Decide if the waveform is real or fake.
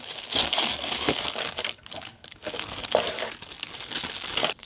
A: fake